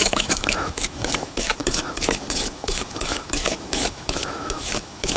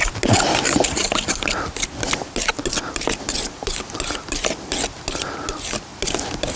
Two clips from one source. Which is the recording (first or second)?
second